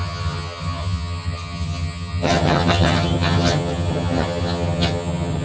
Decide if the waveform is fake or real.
fake